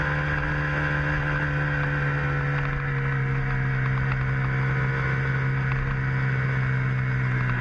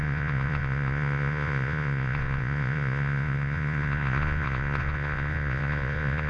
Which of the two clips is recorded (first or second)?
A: first